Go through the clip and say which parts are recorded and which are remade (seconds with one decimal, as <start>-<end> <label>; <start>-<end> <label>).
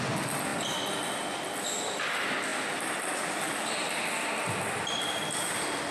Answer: 0.0-5.9 recorded